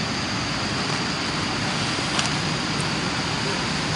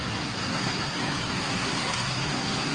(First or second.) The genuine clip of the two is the first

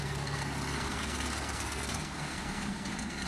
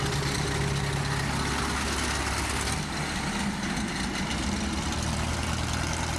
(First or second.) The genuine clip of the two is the second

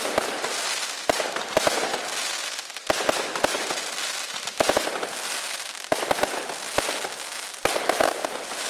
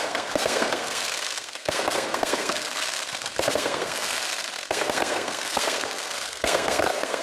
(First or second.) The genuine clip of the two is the first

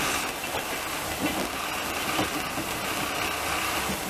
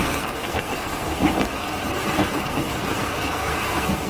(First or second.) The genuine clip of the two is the first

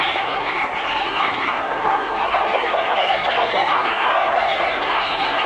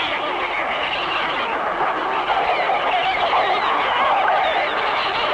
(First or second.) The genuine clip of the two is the second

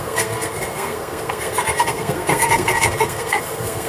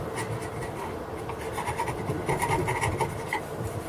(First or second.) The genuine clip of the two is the second